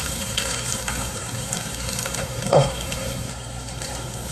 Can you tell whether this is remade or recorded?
remade